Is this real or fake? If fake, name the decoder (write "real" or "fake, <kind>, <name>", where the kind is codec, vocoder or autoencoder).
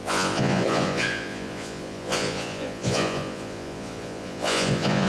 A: fake, vocoder, Vocos